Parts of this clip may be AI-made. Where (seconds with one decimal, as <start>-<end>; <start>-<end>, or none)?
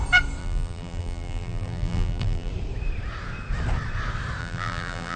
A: 0.4-2.5; 4.4-5.2